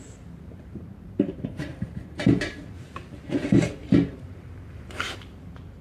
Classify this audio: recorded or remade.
remade